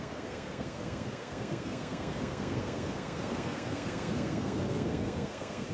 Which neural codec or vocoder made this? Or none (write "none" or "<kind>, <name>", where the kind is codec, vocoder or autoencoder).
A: codec, SNAC